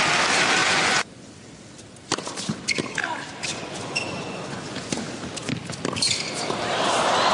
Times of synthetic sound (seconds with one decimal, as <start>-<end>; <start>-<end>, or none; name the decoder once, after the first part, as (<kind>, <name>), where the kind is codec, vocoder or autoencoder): 0.6-1.3 (vocoder, Vocos); 3.5-4.9